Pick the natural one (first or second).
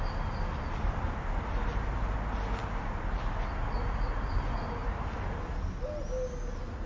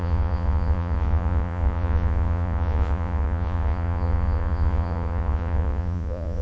first